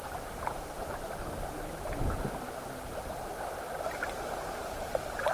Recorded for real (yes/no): yes